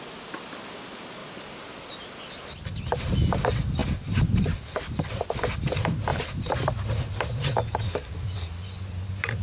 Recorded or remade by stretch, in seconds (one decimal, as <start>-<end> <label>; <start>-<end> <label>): 0.0-9.4 recorded